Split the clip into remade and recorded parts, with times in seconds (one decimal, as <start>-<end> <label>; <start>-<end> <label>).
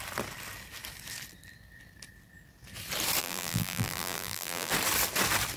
0.0-3.2 recorded; 3.2-4.7 remade; 4.7-5.6 recorded